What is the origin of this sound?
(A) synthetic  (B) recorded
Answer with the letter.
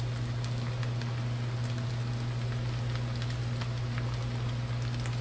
B